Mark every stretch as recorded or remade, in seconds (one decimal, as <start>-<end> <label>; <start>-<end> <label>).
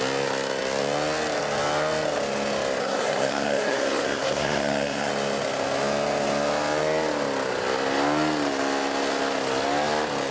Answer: 0.0-2.8 recorded; 2.8-5.1 remade; 5.1-10.3 recorded